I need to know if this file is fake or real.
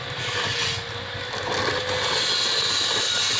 real